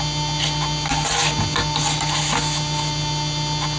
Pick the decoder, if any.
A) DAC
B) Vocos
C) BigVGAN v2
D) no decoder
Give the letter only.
D